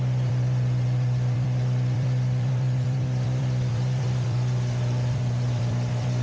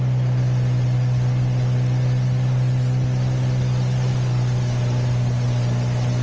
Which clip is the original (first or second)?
second